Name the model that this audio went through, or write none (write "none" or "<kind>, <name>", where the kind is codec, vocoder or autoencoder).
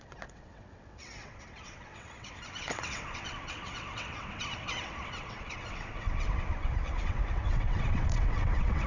vocoder, WaveNeXt